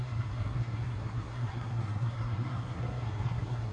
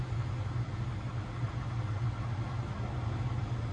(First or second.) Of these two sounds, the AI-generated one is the first